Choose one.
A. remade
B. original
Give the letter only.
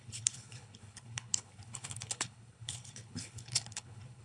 A